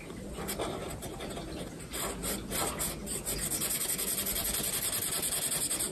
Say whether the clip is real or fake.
real